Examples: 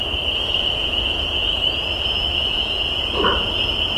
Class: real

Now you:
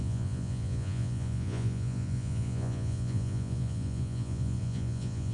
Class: fake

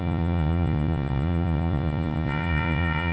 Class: fake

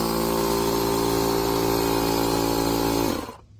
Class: real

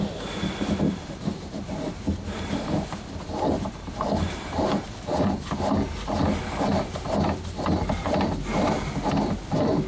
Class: real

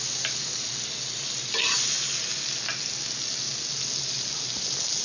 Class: real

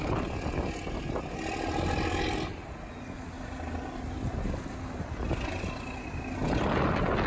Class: real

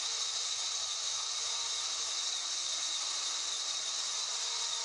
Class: real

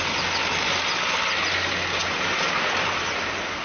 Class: real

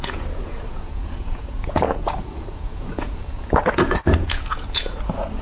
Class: fake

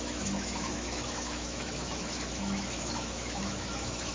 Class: fake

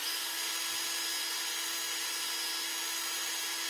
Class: real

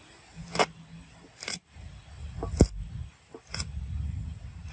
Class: real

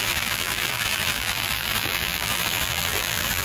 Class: fake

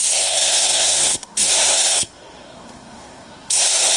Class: fake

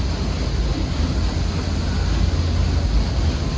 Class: real